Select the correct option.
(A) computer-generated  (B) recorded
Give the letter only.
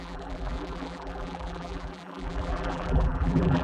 A